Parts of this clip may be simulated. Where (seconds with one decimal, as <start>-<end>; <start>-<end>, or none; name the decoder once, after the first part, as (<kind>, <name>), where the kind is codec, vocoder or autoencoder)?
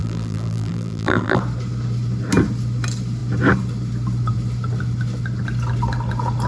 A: 0.0-1.4 (vocoder, BigVGAN v2)